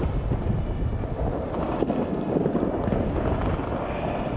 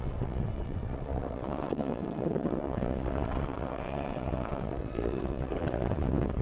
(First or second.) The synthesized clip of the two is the second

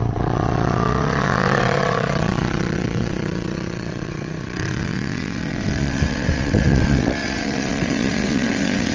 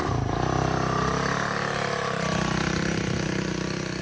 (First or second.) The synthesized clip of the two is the first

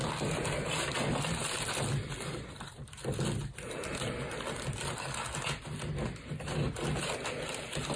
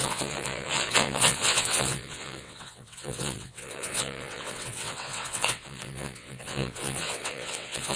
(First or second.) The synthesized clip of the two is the second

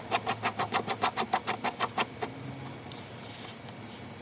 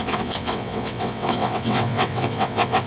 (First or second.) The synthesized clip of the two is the second